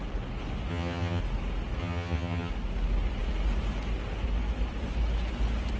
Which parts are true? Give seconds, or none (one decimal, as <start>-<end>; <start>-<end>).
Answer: 0.0-0.7; 1.2-1.8; 2.5-5.8